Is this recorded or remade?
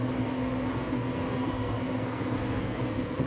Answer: remade